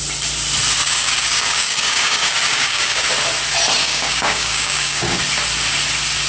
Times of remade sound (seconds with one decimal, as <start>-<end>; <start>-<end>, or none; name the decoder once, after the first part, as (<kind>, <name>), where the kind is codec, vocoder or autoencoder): 0.8-3.1 (codec, DAC); 3.8-5.2